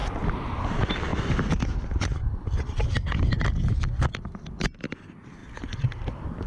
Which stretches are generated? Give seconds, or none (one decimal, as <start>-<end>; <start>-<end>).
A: 1.1-3.8; 5.4-6.5